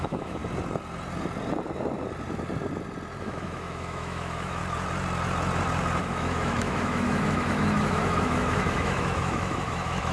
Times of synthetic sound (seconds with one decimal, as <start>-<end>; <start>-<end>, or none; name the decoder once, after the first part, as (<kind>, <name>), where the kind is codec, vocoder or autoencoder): 0.0-0.4 (autoencoder, DAC-VAE); 3.2-4.6; 6.0-10.1